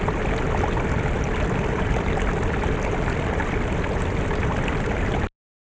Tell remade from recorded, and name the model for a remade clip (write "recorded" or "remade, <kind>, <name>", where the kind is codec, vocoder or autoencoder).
recorded